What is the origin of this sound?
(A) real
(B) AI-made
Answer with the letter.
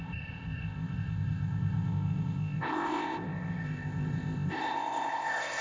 B